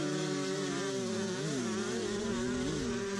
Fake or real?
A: real